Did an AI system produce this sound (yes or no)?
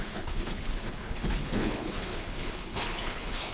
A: yes